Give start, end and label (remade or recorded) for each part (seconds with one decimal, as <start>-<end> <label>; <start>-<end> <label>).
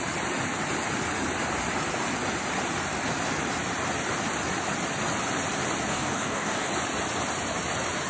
0.0-5.9 recorded; 5.9-6.7 remade; 6.7-8.1 recorded